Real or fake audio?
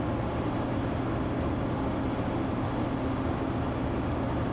real